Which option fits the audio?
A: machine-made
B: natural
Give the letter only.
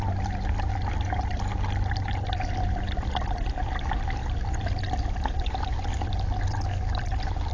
B